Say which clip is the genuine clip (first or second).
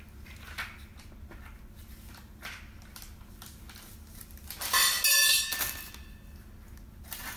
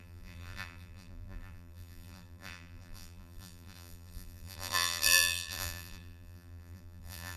first